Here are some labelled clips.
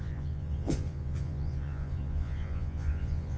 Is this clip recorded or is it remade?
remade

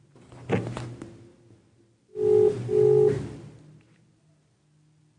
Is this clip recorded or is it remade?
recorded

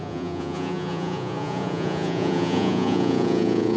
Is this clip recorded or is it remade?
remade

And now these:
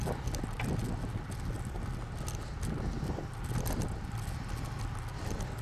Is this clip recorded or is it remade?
recorded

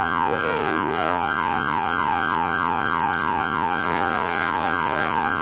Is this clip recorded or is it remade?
remade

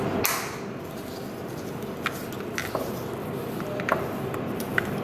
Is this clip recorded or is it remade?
recorded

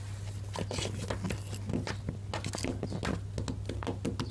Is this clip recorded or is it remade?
recorded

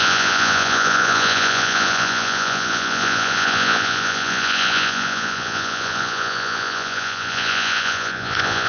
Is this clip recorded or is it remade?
remade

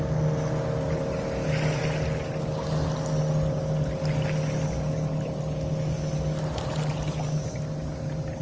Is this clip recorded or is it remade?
recorded